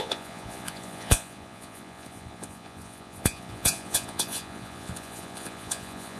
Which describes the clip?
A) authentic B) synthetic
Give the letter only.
B